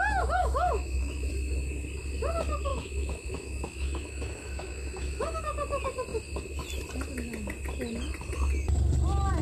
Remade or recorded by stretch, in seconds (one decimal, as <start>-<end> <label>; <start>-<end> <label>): 0.0-0.4 recorded; 0.4-1.3 remade; 1.3-2.7 recorded; 2.7-5.4 remade; 5.4-9.4 recorded